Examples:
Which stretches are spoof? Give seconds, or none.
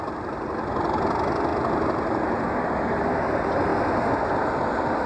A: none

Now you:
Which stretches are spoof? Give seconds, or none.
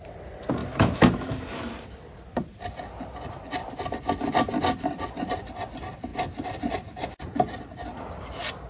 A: 0.6-1.3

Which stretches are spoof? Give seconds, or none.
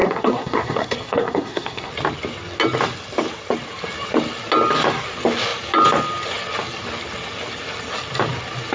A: 0.0-1.9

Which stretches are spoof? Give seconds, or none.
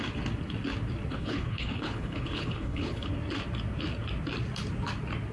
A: 1.1-3.1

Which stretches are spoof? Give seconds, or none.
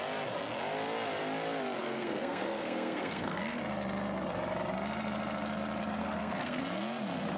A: 1.8-3.6; 6.0-6.6